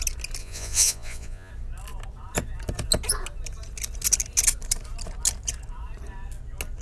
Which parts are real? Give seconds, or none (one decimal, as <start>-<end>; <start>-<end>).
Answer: 0.0-0.4; 1.5-6.8

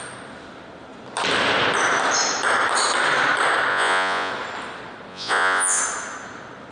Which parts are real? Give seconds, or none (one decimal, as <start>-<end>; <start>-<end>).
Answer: 0.0-3.7; 4.3-5.1; 5.8-6.7